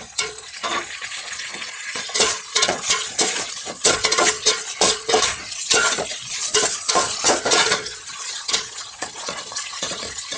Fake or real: fake